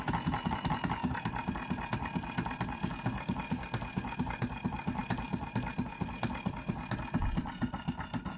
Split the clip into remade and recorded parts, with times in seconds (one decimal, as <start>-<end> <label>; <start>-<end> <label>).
0.0-8.4 recorded